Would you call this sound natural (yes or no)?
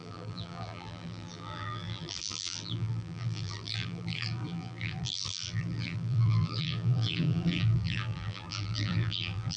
no